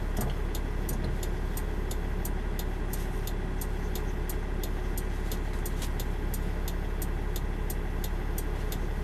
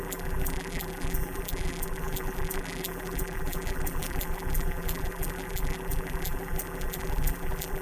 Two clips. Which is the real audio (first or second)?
first